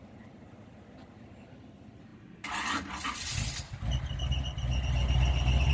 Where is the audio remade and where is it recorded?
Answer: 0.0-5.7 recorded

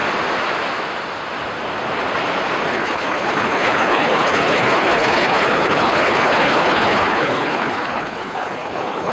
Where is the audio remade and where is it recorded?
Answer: 0.0-2.7 recorded; 2.7-9.1 remade